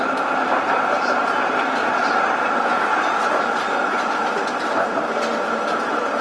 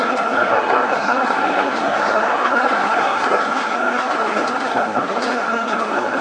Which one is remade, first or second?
second